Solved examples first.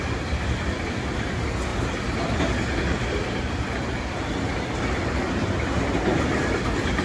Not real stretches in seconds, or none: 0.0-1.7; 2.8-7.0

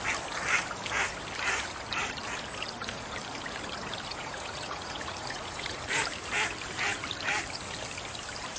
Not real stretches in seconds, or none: 4.1-6.0